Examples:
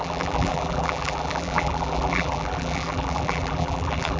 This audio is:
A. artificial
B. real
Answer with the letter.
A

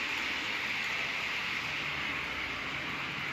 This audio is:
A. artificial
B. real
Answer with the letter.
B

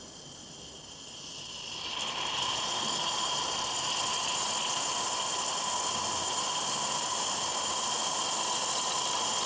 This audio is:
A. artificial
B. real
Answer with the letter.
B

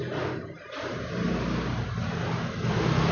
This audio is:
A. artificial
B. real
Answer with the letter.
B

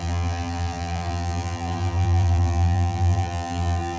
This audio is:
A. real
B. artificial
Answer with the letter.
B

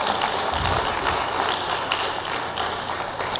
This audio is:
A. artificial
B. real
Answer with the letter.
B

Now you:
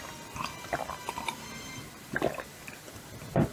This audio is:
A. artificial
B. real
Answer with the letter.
B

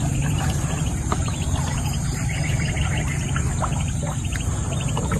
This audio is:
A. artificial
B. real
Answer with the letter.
A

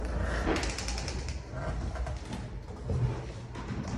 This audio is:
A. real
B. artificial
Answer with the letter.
A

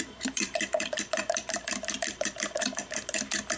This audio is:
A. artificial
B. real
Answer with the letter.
A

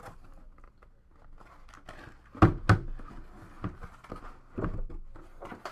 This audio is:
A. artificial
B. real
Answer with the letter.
B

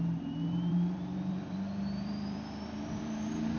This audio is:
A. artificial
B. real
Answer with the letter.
A